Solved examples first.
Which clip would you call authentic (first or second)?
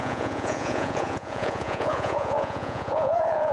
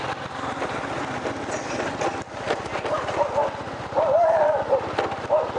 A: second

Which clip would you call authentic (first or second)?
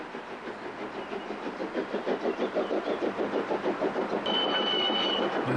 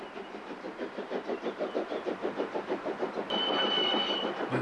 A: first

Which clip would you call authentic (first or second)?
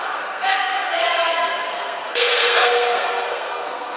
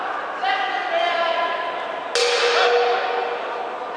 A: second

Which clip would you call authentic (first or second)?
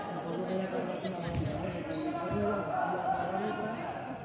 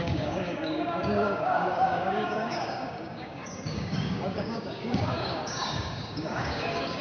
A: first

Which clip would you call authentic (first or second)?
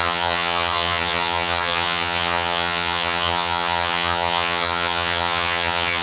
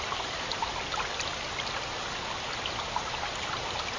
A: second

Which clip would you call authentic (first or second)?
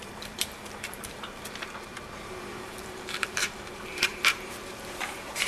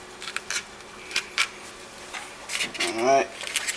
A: second